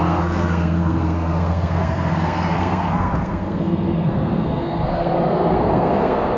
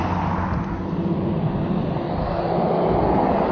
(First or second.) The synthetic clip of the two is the first